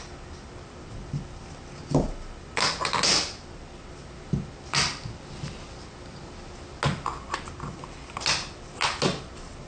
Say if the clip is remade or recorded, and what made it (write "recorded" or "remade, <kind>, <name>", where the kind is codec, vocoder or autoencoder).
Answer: recorded